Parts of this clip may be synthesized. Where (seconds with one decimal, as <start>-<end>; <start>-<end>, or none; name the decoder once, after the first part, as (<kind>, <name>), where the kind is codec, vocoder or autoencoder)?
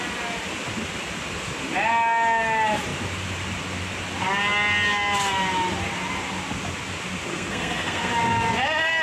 7.3-8.1 (codec, SNAC)